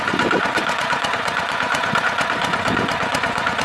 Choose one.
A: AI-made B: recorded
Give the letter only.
A